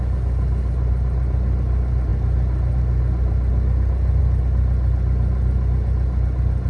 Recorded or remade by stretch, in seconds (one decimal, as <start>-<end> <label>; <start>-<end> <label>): 0.0-6.7 recorded